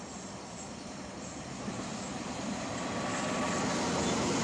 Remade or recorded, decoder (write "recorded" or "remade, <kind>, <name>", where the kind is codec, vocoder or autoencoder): recorded